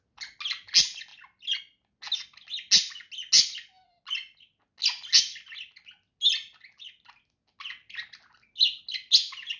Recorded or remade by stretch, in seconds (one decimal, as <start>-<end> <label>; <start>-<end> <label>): 0.0-9.6 recorded